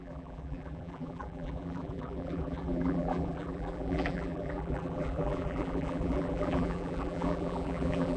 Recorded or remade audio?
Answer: remade